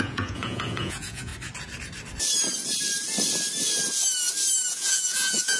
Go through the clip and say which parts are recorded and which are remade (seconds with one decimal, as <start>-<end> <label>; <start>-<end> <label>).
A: 0.0-1.3 remade; 1.3-4.7 recorded; 4.7-5.6 remade